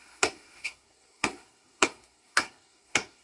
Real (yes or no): no